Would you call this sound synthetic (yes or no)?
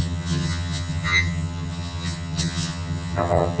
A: yes